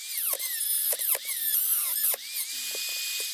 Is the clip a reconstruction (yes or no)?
no